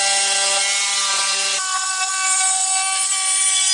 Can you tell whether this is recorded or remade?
recorded